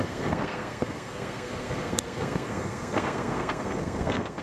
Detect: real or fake fake